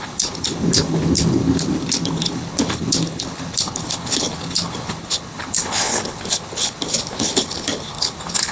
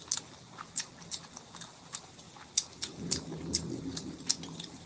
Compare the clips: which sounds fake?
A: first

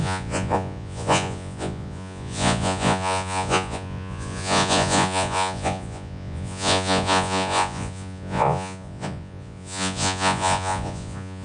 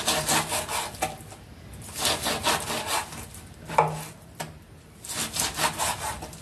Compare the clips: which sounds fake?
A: first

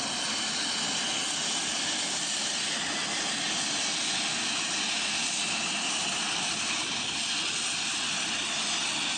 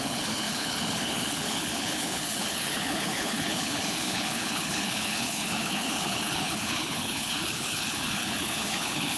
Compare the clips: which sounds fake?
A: second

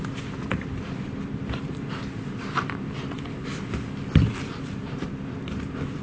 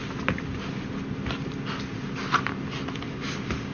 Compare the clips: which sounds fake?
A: first